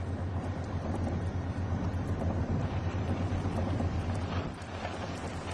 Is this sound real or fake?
fake